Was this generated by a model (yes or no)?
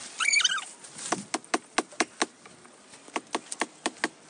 no